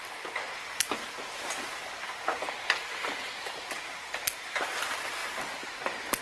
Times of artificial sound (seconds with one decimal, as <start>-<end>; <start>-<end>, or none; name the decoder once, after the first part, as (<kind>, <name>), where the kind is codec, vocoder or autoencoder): none